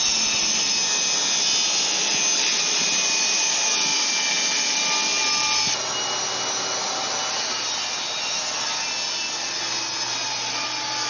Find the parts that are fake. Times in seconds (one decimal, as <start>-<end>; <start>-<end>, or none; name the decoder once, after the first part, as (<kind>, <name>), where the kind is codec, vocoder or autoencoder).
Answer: none